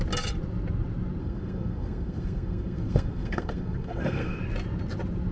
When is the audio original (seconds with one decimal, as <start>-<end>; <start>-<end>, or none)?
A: 0.0-1.2; 4.4-5.3